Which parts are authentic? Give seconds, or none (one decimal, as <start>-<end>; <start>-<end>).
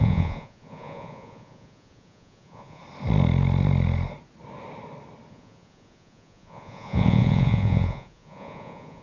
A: 2.8-5.3